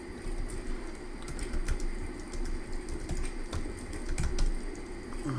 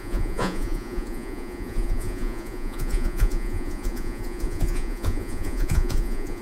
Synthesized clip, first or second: second